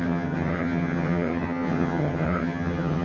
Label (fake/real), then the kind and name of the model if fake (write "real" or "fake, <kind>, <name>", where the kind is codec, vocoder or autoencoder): fake, vocoder, HiFi-GAN